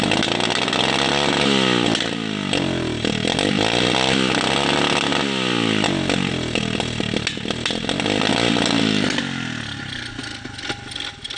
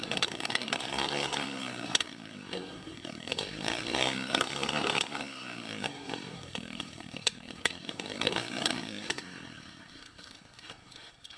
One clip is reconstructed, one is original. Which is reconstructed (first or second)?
second